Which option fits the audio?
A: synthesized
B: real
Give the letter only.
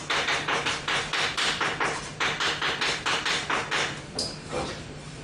A